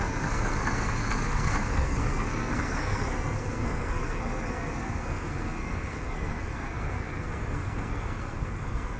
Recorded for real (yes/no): no